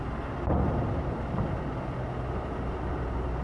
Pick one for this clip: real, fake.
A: real